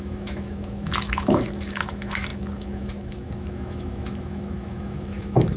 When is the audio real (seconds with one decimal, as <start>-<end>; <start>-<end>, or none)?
none